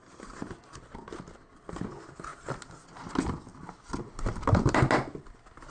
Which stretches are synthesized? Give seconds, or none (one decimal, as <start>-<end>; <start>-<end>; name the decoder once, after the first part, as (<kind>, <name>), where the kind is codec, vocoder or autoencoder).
none

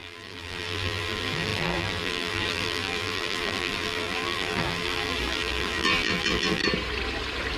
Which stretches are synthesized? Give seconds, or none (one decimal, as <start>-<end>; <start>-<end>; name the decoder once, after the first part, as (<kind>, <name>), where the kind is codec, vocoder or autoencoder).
0.0-6.6 (vocoder, BigVGAN v2)

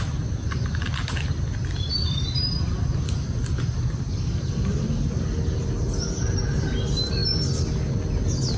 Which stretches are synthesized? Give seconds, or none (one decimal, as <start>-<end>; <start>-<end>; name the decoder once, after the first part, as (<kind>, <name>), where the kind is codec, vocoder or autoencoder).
none

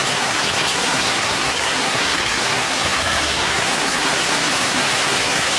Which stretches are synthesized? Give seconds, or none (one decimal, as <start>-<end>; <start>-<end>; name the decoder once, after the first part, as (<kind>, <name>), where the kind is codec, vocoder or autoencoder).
0.0-5.6 (codec, SNAC)